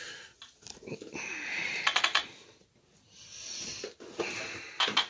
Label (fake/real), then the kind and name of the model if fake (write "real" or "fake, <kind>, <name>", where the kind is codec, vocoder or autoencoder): real